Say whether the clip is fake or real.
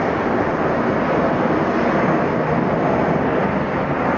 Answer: real